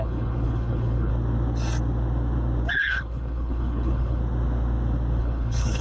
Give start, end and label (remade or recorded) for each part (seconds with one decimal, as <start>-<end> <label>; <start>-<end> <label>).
0.0-1.1 remade; 1.1-2.7 recorded; 2.7-4.2 remade; 4.2-5.2 recorded; 5.2-5.8 remade